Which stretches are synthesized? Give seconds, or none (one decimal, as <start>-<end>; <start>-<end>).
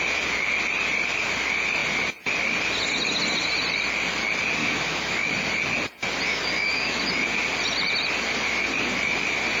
4.6-5.3; 6.3-7.0